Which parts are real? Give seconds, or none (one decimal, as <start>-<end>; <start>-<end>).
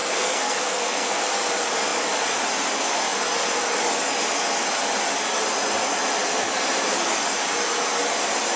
1.2-8.6